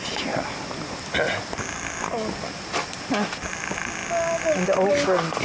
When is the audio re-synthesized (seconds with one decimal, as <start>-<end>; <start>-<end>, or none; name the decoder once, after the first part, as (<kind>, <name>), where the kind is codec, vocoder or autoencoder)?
none